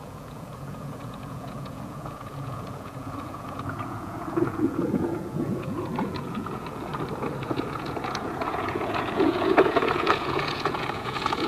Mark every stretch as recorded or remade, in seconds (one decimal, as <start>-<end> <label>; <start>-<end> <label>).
0.0-6.9 remade; 6.9-7.4 recorded; 7.4-11.5 remade